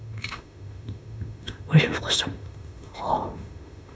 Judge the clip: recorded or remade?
remade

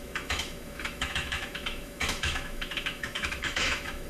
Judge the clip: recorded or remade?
remade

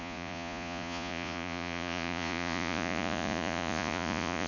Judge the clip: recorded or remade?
remade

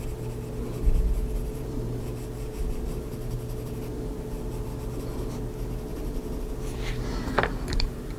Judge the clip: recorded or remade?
remade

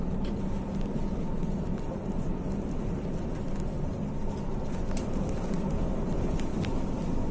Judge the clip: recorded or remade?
recorded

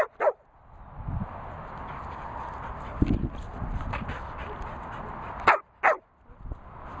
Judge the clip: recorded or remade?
recorded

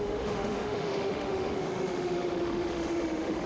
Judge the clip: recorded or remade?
remade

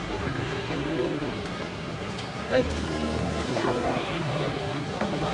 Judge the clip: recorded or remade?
remade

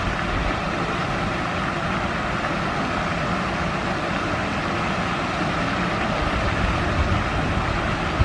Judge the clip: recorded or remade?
recorded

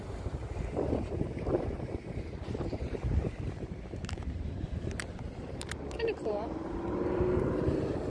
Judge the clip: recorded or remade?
remade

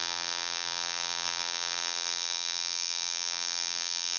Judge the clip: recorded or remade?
remade